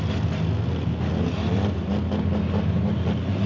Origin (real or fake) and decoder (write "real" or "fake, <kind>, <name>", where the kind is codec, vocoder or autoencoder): real